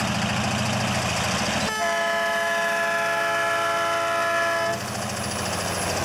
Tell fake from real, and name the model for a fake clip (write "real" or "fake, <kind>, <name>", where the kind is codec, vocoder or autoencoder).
real